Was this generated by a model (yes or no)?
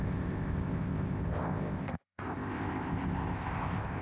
yes